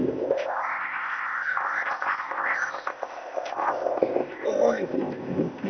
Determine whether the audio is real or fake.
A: fake